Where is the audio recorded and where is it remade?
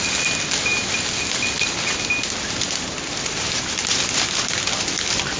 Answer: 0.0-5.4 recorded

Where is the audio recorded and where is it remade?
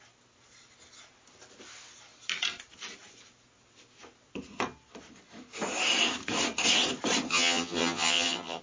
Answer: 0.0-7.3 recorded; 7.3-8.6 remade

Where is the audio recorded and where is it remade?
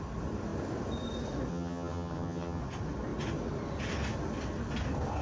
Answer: 0.0-1.5 recorded; 1.5-2.6 remade; 2.6-5.2 recorded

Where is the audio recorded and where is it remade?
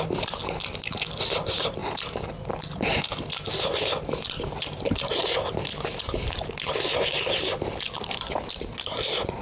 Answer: 0.0-9.4 recorded